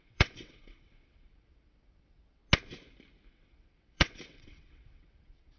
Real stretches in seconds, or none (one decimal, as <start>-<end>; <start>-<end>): 2.4-3.3